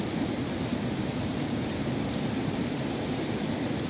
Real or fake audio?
fake